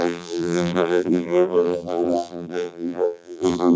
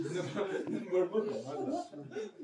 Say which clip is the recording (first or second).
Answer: second